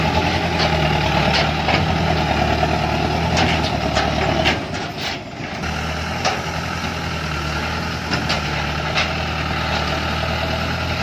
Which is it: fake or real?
real